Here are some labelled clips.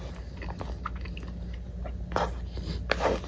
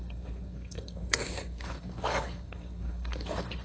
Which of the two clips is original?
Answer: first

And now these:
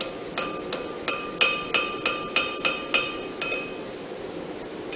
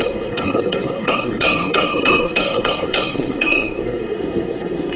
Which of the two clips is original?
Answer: first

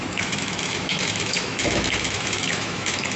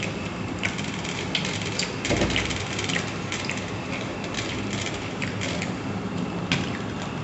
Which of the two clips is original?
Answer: second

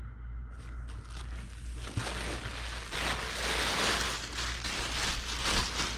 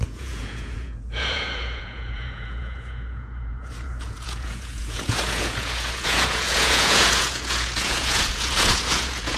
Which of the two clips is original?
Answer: first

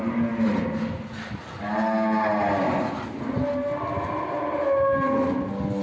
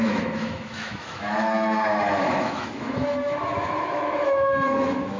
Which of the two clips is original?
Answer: first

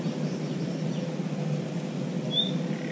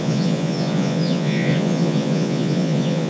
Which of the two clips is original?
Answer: first